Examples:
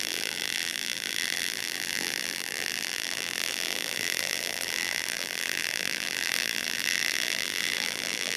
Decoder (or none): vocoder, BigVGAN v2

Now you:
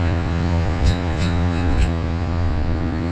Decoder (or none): vocoder, Vocos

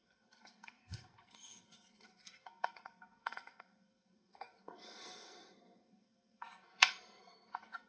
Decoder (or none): codec, SNAC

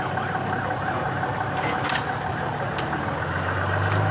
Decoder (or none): none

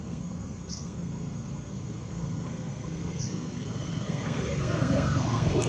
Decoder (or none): codec, SNAC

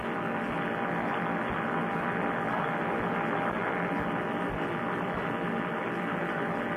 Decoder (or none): none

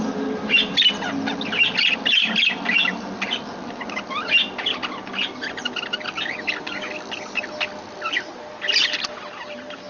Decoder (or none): none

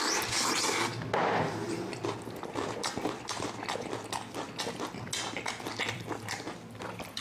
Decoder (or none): none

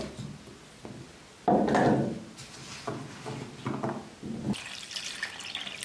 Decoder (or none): none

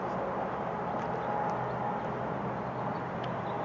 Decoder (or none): none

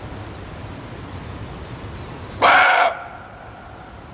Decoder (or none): none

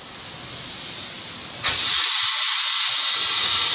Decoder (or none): none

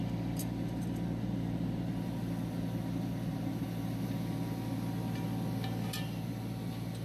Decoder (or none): none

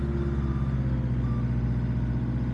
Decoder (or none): none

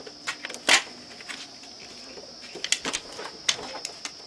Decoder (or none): none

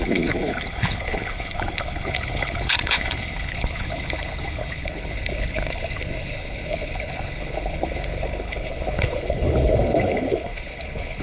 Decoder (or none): codec, HILCodec